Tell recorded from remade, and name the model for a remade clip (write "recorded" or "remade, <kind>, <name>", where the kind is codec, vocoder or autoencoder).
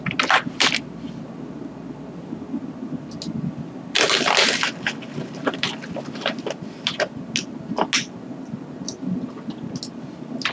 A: recorded